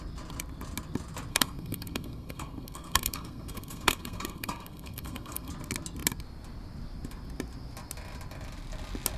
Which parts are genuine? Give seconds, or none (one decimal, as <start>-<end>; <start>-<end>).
0.0-1.3; 5.5-9.2